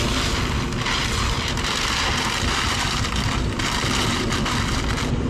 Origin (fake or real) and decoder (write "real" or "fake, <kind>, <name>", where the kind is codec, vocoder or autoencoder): real